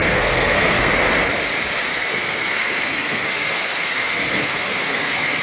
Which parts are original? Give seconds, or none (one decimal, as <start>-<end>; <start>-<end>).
0.9-1.9